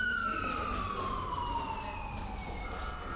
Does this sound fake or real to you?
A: real